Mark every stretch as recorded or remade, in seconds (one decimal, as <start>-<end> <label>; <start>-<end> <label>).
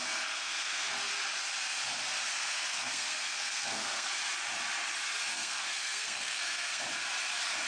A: 0.0-0.9 remade; 0.9-2.3 recorded; 2.3-4.1 remade; 4.1-5.3 recorded; 5.3-6.8 remade; 6.8-7.7 recorded